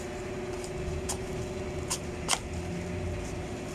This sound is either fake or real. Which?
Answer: real